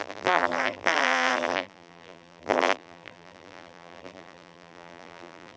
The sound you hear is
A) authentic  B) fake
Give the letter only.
B